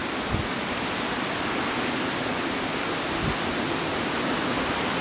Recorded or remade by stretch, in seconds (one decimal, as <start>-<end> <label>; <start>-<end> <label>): 0.0-5.0 recorded